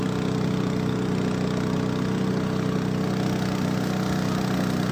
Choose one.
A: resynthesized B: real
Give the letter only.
B